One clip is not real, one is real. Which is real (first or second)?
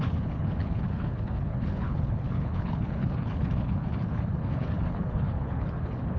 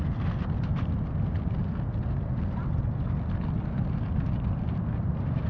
second